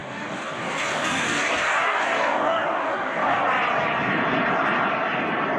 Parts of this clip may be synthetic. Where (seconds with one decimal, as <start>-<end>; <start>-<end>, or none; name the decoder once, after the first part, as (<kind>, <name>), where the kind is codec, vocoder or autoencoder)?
0.0-3.4 (codec, DAC)

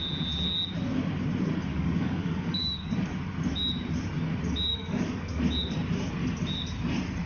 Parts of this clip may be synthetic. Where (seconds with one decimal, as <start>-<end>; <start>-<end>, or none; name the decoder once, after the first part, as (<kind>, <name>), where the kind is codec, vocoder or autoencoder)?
1.7-2.9 (codec, DAC); 4.7-5.4

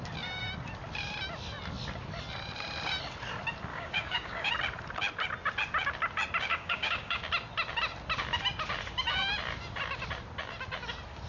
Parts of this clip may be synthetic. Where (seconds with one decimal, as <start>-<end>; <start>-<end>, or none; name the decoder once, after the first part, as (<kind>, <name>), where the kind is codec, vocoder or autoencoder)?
3.7-4.5 (codec, DAC); 6.5-7.2

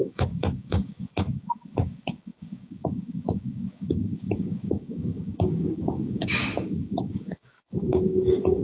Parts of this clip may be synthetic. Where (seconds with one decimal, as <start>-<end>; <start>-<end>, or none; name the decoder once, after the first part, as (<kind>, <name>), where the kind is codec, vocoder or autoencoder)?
0.0-8.6 (codec, DAC)